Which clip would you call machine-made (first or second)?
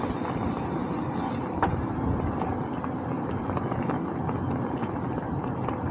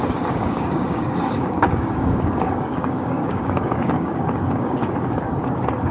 second